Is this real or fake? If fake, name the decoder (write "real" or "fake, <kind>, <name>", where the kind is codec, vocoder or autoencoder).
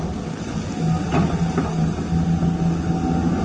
real